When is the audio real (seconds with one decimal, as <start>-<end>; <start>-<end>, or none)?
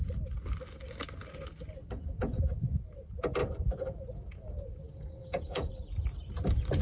0.0-1.8; 2.8-3.4; 5.7-6.8